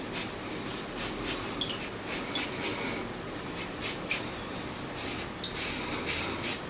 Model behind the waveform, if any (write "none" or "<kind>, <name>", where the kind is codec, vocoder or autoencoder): none